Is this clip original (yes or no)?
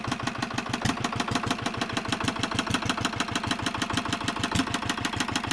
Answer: yes